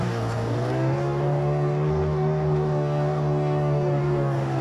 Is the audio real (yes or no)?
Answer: no